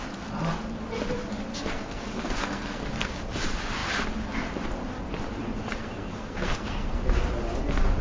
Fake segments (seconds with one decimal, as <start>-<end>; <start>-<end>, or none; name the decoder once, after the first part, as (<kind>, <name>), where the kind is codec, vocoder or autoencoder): 1.5-3.2 (codec, SNAC); 5.7-7.0